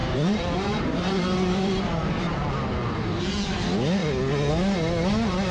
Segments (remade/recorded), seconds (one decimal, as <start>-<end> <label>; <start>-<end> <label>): 0.0-3.2 remade; 3.2-5.5 recorded